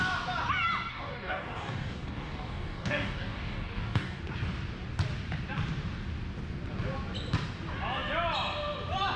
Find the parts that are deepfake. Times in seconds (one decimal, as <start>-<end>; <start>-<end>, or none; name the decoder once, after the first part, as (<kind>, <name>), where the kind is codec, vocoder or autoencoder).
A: 0.9-4.2 (codec, DAC)